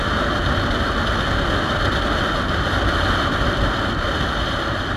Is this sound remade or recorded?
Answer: recorded